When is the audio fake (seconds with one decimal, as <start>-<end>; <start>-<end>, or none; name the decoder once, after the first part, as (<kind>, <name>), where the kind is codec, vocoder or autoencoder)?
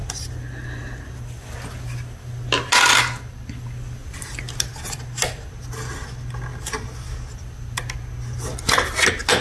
none